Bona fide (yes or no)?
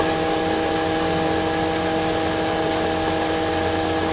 yes